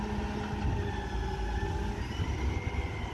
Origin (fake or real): real